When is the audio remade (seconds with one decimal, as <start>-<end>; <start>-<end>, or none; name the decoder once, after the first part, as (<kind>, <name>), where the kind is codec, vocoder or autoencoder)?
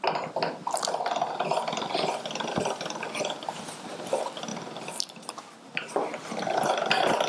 4.5-5.4 (vocoder, BigVGAN v2)